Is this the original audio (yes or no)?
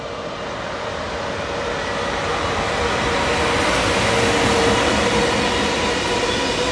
yes